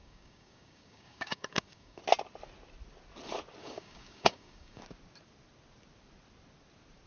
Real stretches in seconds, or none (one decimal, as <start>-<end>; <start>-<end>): 2.0-3.6; 4.8-7.1